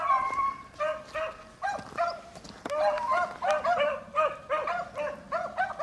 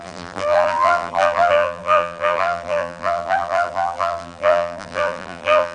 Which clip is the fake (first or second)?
second